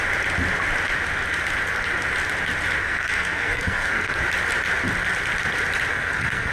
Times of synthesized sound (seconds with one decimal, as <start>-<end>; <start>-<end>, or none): 2.8-4.2; 5.9-6.5